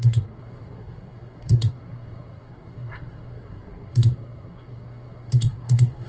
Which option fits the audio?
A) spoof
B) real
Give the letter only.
A